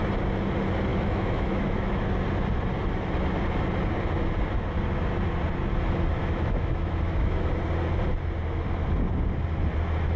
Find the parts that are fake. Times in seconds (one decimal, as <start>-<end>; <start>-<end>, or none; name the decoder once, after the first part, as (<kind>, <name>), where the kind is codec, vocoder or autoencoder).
0.9-2.1 (autoencoder, DAC-VAE); 6.2-7.5